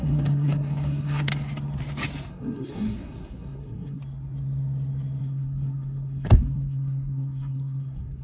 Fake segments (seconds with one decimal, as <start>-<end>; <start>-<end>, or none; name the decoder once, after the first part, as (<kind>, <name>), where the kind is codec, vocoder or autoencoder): 0.0-1.3 (codec, SNAC); 2.3-4.0; 5.2-8.2